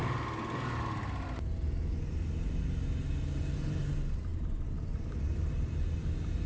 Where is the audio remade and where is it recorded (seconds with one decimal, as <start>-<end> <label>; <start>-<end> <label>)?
0.0-4.3 recorded; 4.3-5.9 remade; 5.9-6.5 recorded